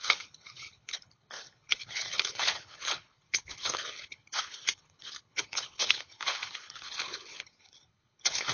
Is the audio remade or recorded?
remade